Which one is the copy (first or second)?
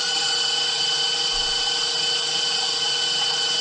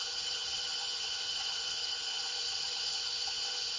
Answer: second